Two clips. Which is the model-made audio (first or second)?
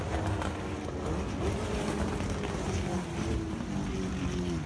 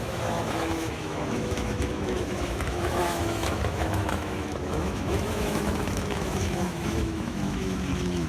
second